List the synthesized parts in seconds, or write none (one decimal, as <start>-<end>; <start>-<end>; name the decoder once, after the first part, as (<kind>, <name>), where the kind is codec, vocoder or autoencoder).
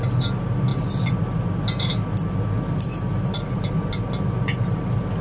none